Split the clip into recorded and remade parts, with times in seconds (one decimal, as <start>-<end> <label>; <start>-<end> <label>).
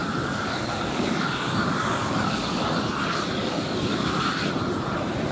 0.0-2.6 remade; 2.6-3.4 recorded; 3.4-4.2 remade; 4.2-5.3 recorded